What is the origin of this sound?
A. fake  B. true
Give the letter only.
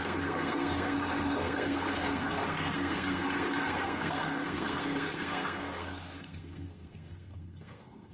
A